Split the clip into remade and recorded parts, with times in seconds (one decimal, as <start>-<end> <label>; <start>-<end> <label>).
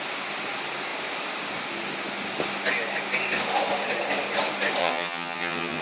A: 0.0-4.8 recorded; 4.8-5.8 remade